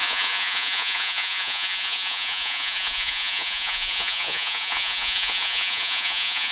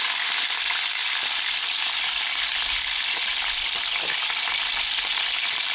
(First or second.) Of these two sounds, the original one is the second